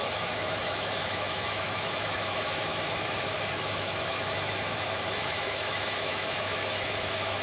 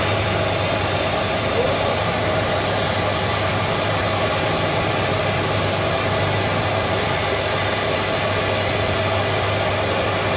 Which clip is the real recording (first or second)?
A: second